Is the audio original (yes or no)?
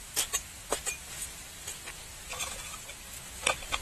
yes